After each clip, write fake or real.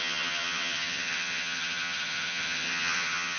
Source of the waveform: fake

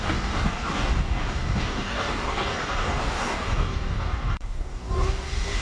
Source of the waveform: fake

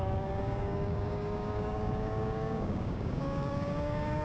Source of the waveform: fake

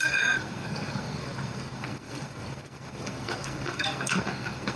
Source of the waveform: fake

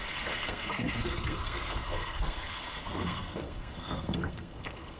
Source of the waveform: fake